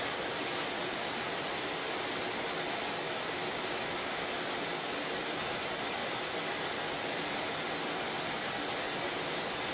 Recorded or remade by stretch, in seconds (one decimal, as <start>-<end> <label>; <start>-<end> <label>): 0.0-9.7 recorded